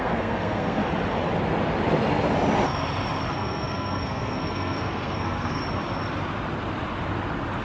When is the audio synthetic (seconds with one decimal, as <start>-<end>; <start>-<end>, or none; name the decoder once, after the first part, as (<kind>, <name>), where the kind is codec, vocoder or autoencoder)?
0.0-0.8 (codec, SNAC); 3.3-5.6